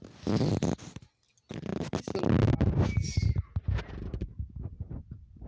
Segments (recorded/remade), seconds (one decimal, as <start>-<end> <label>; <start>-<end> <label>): 0.0-5.5 recorded